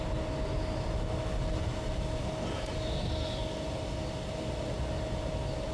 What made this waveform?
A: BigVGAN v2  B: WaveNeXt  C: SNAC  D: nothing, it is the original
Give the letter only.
D